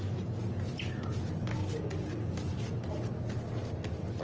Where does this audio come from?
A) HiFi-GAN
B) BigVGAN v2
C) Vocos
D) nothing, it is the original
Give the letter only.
D